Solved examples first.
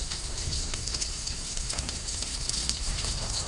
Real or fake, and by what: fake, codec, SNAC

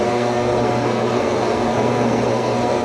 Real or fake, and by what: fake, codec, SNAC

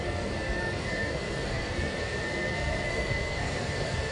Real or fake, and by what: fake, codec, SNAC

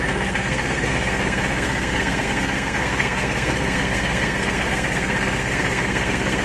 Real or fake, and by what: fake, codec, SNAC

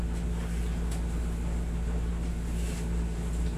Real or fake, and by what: real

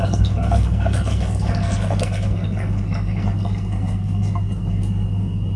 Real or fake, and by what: fake, codec, SNAC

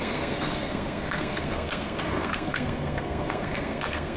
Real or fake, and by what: fake, codec, SNAC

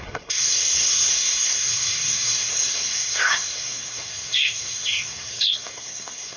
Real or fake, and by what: fake, codec, SNAC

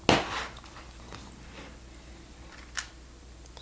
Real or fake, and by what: real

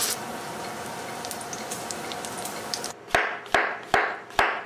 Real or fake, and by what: real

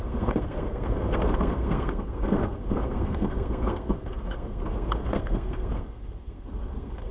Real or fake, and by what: fake, codec, SNAC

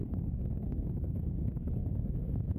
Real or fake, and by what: fake, codec, SNAC